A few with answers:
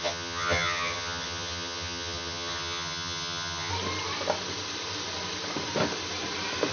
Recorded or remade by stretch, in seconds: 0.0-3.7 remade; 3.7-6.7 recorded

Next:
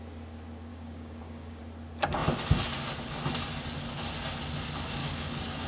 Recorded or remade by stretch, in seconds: 0.0-0.7 recorded; 0.7-1.6 remade; 1.6-5.0 recorded; 5.0-5.7 remade

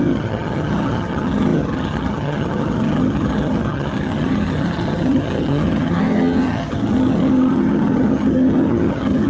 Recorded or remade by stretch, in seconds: 0.0-9.3 remade

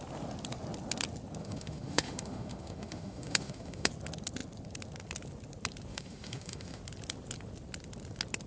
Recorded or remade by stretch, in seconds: 0.0-1.4 recorded; 1.4-3.9 remade; 3.9-5.9 recorded; 5.9-6.8 remade; 6.8-8.5 recorded

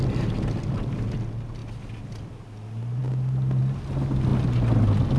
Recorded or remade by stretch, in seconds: 0.0-5.2 recorded

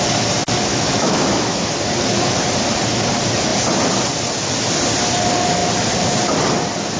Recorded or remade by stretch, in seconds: 0.0-0.7 recorded; 0.7-1.7 remade; 1.7-7.0 recorded